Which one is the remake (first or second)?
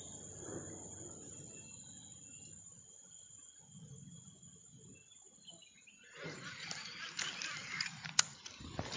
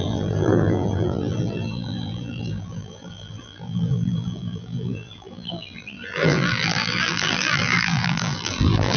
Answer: second